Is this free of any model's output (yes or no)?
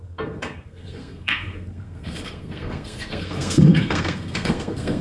no